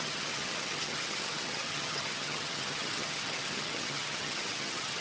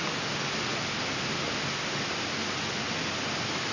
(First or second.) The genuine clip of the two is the second